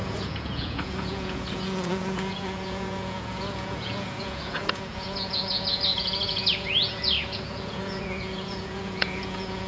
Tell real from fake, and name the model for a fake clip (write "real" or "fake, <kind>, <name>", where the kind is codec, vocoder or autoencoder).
fake, vocoder, Vocos